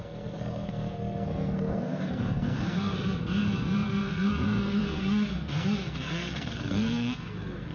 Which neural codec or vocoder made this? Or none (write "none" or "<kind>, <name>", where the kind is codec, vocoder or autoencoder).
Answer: codec, SNAC